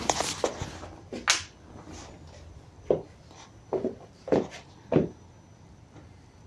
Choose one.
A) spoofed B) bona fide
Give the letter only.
B